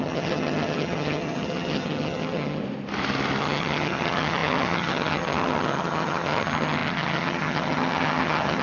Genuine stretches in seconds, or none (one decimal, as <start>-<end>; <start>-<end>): 2.6-3.4